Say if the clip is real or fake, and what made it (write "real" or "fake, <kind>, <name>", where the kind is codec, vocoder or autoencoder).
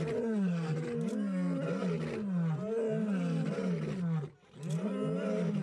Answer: real